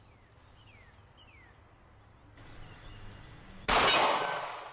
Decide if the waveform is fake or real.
real